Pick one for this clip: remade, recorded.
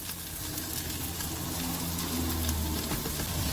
recorded